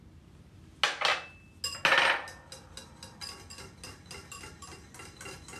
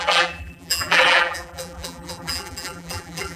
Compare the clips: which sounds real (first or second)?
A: first